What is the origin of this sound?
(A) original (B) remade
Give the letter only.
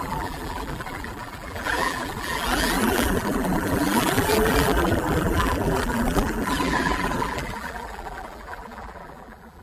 B